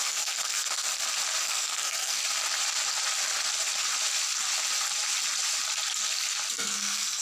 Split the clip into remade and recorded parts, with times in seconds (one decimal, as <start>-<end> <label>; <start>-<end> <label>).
0.0-0.9 remade; 0.9-1.4 recorded; 1.4-2.2 remade; 2.2-6.5 recorded; 6.5-7.2 remade